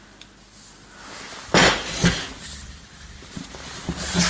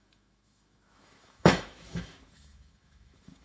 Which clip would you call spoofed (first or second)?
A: second